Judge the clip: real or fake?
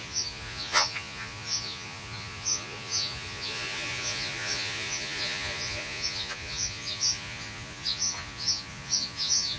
fake